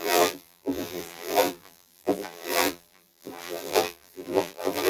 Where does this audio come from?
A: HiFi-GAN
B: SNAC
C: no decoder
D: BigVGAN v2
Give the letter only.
D